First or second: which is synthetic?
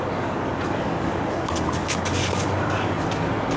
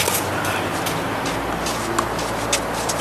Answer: first